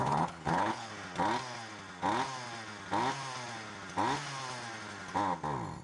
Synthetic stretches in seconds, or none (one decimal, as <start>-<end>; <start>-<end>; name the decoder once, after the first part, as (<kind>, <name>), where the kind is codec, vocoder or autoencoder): 0.0-0.9 (codec, HILCodec)